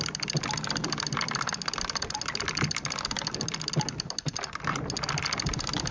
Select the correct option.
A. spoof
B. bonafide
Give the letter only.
B